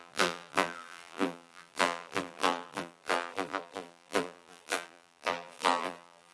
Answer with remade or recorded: remade